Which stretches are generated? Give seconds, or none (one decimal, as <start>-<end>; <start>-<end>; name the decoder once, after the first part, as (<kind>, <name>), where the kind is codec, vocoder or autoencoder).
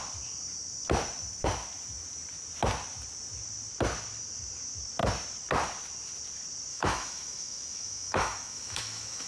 6.7-9.3 (autoencoder, DAC-VAE)